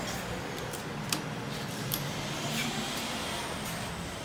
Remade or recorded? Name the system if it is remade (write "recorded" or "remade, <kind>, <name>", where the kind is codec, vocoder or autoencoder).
recorded